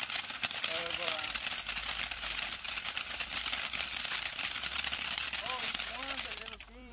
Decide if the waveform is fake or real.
fake